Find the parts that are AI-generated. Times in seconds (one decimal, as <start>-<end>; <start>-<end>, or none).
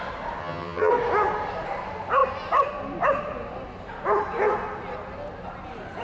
0.4-0.9